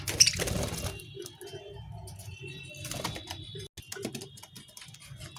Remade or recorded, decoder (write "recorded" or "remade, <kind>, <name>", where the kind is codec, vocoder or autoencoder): recorded